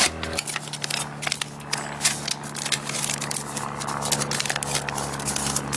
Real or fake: real